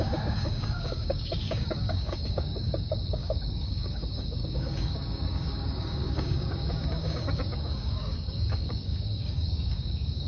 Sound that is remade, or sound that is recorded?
remade